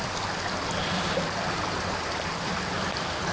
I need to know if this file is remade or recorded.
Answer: recorded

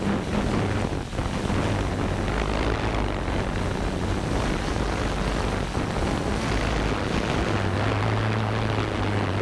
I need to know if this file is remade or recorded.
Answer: recorded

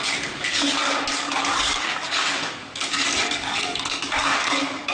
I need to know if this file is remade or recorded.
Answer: remade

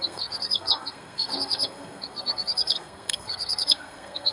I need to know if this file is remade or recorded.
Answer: remade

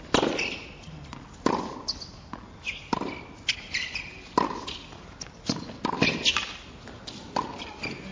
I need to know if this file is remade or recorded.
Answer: recorded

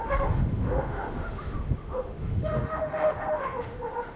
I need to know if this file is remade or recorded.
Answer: remade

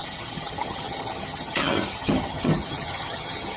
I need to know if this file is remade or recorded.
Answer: remade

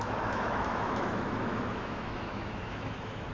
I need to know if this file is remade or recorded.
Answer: remade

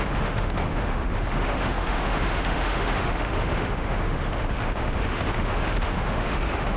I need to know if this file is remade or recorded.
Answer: remade